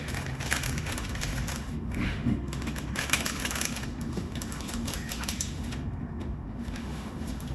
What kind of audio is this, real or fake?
fake